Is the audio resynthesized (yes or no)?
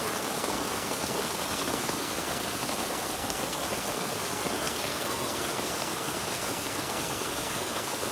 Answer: yes